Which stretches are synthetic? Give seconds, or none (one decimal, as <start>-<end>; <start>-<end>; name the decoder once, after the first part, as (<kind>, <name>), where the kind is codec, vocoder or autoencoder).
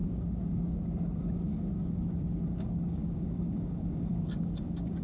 0.0-5.0 (codec, DAC)